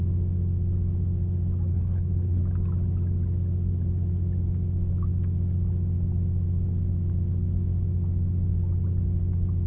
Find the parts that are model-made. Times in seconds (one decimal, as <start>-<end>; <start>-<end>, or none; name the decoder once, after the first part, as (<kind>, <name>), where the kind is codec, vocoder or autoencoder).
1.7-2.4 (codec, HILCodec)